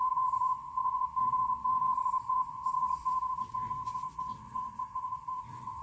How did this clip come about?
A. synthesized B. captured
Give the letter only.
A